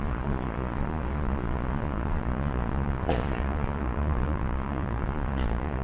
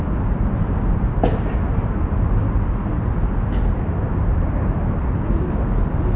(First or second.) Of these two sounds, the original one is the second